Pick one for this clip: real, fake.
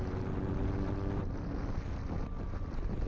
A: real